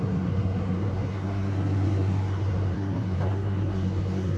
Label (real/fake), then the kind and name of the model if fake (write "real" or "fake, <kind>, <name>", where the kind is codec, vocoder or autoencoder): fake, codec, SNAC